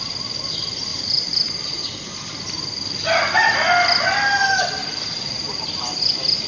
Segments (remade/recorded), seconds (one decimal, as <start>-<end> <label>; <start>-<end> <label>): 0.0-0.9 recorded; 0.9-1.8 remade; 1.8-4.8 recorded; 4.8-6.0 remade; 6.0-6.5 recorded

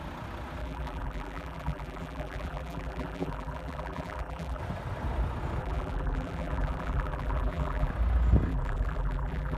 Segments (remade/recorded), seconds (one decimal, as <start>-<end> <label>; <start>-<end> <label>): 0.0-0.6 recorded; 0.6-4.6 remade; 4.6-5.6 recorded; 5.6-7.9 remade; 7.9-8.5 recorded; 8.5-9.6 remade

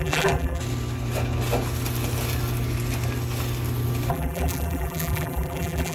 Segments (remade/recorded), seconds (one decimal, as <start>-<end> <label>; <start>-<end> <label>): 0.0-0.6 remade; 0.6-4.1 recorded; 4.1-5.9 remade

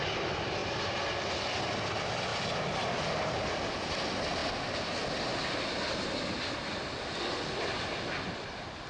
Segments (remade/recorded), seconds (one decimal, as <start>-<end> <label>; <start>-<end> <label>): 0.0-0.6 recorded; 0.6-1.3 remade; 1.3-2.3 recorded; 2.3-2.9 remade; 2.9-8.9 recorded

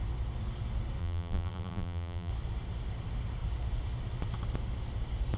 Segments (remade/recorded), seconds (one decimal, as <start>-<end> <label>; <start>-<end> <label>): 0.0-1.0 recorded; 1.0-2.3 remade; 2.3-5.4 recorded